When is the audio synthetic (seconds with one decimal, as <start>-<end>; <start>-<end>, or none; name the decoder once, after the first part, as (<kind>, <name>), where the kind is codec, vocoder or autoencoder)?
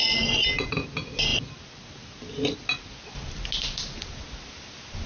none